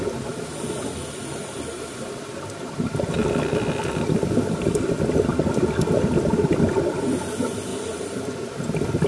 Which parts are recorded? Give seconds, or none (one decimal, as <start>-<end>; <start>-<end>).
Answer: 0.0-7.7; 8.6-9.1